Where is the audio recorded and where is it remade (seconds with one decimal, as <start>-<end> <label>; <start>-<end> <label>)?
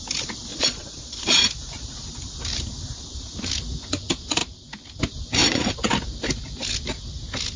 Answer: 0.0-0.5 recorded; 0.5-1.4 remade; 1.4-5.4 recorded; 5.4-5.9 remade; 5.9-7.6 recorded